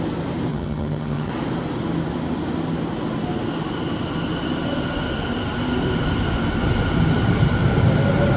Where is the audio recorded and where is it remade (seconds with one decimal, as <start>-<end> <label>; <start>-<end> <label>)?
0.0-0.5 recorded; 0.5-1.3 remade; 1.3-8.4 recorded